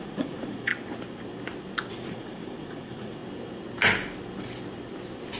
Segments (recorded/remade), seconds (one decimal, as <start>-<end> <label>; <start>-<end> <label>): 0.0-0.7 remade; 0.7-1.9 recorded; 1.9-3.2 remade; 3.2-5.4 recorded